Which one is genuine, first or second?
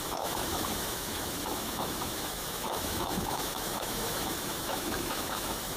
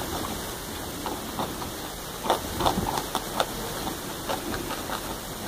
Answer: second